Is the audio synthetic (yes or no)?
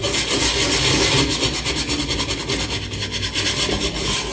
no